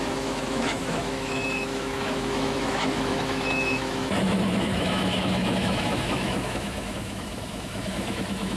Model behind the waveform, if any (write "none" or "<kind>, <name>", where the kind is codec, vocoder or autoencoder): autoencoder, DAC-VAE